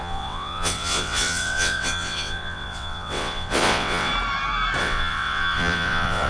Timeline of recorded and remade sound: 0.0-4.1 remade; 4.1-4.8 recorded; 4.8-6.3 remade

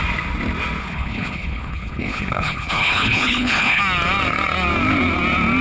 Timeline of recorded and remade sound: 0.0-0.8 recorded; 0.8-3.8 remade; 3.8-5.6 recorded

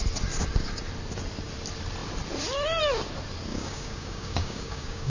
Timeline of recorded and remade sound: 0.0-3.5 recorded; 3.5-5.1 remade